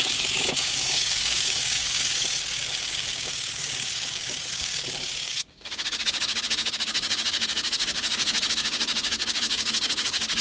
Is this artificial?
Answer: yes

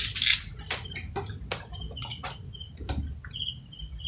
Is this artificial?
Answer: no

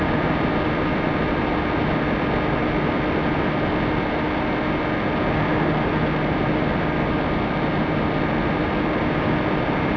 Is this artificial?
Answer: no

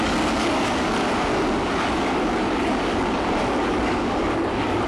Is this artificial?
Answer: yes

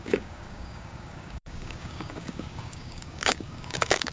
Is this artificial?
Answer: yes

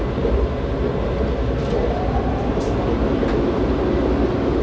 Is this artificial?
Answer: no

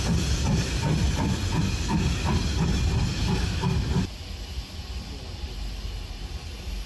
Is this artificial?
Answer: no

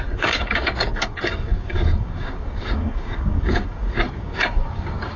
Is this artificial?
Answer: yes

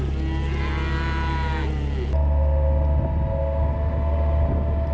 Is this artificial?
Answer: no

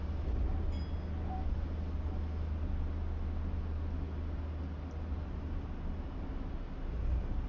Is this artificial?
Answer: no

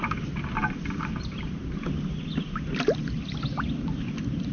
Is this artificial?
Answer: no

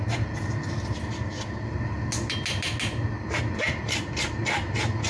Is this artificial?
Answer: no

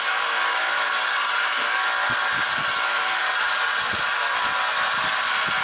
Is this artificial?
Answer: no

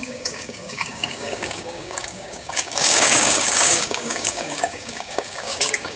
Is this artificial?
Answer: yes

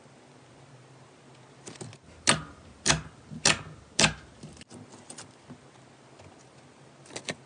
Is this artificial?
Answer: no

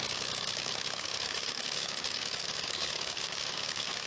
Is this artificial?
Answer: yes